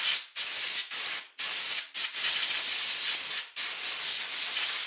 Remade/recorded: recorded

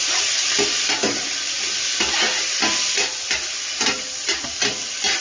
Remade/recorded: recorded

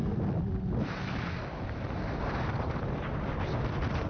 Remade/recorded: recorded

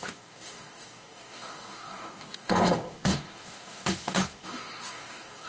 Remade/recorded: remade